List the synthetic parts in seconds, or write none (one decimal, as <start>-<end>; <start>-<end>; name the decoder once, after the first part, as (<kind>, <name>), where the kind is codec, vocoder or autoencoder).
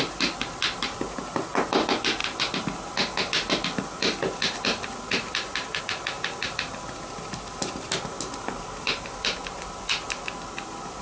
none